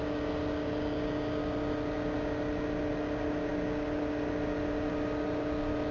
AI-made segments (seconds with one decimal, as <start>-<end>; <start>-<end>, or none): none